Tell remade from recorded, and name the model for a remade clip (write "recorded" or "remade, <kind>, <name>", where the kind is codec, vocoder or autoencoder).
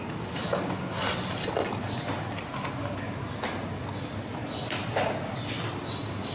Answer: recorded